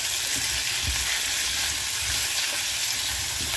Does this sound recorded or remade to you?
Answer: recorded